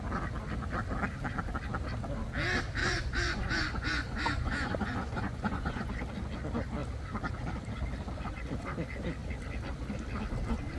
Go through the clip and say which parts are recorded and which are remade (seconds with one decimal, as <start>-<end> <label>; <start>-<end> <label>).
0.0-2.8 recorded; 2.8-5.9 remade; 5.9-10.8 recorded